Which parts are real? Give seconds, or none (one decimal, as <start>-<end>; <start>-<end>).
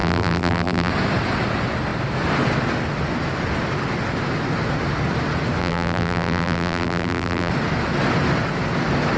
0.9-5.6; 7.5-9.2